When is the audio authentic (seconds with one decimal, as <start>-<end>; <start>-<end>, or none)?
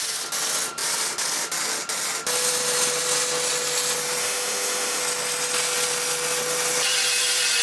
0.0-4.2; 5.0-7.6